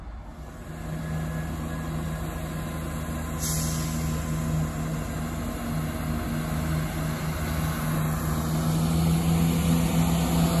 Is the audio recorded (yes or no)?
yes